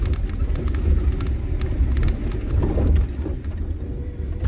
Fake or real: real